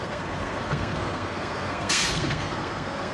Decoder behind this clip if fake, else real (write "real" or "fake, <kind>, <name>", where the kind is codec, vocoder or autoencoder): fake, codec, SNAC